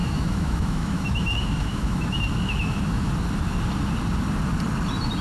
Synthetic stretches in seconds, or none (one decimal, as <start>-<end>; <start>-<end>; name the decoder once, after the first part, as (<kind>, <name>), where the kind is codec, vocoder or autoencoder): 0.0-3.1 (autoencoder, DAC-VAE)